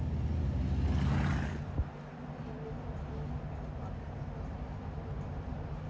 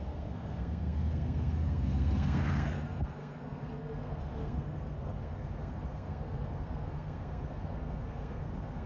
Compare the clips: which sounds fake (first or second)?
second